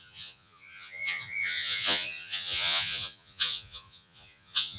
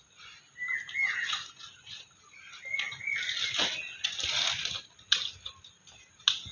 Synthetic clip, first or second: first